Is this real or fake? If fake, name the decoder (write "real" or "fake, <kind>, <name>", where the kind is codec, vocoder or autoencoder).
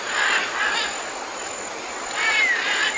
real